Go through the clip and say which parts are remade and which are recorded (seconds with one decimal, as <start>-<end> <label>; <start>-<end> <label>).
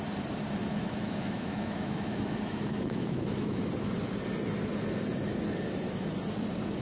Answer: 0.0-0.7 recorded; 0.7-3.6 remade; 3.6-6.8 recorded